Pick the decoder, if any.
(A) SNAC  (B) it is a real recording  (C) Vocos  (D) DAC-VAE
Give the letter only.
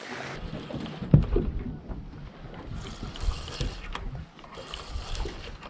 B